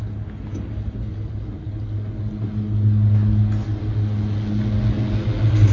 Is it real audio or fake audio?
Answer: real